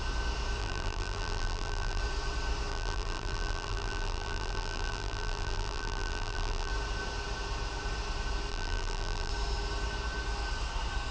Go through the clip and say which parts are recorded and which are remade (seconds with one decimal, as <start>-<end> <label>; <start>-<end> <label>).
0.0-0.6 recorded; 0.6-2.0 remade; 2.0-2.7 recorded; 2.7-6.7 remade; 6.7-8.5 recorded; 8.5-9.3 remade; 9.3-11.1 recorded